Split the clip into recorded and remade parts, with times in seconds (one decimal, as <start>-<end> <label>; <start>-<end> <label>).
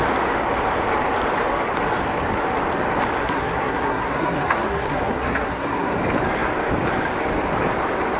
0.0-3.2 recorded; 3.2-6.0 remade; 6.0-8.2 recorded